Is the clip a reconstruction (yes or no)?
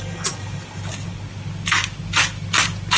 no